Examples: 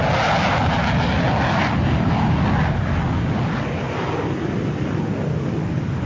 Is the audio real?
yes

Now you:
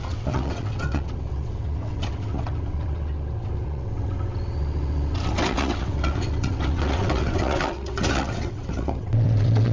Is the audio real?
no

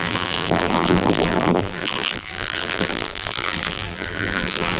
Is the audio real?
no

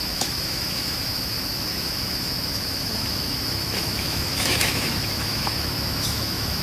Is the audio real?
no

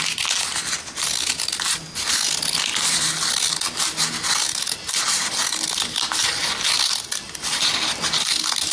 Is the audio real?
yes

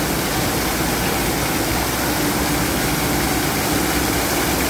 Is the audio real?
yes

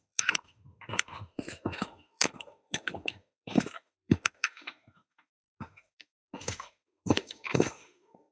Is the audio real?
no